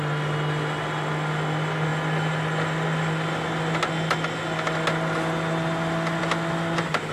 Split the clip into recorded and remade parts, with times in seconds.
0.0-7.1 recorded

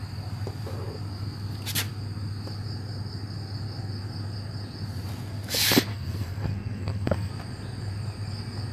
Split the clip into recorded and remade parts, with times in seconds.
0.0-5.9 recorded; 5.9-7.3 remade; 7.3-8.7 recorded

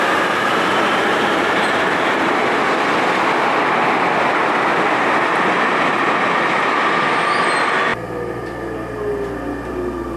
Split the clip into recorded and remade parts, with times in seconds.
0.0-1.1 recorded; 1.1-2.3 remade; 2.3-10.2 recorded

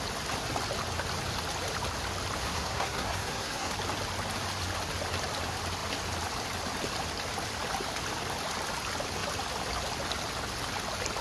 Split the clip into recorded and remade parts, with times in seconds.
0.0-2.4 recorded; 2.4-3.7 remade; 3.7-11.2 recorded